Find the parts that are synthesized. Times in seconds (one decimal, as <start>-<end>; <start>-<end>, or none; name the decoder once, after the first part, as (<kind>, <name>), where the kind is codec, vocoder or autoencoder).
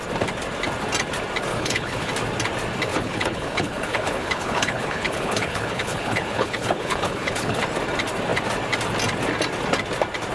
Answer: 1.5-2.1 (codec, HILCodec); 2.9-7.6